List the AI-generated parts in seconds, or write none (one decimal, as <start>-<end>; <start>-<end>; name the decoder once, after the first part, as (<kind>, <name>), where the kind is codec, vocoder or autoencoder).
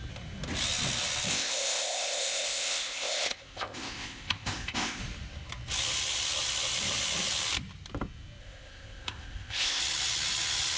1.3-5.0 (codec, ZipCodec); 8.4-9.8